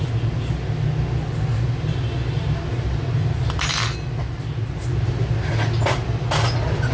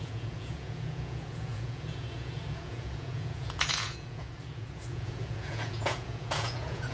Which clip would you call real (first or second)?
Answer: first